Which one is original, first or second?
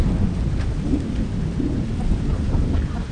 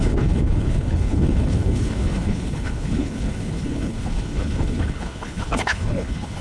first